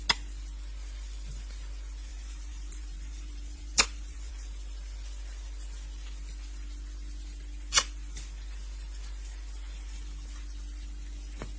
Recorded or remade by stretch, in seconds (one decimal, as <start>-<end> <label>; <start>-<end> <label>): 0.0-2.1 recorded; 2.1-4.3 remade; 4.3-11.6 recorded